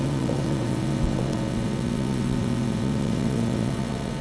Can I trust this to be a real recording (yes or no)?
no